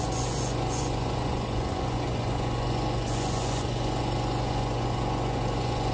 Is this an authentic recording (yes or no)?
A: no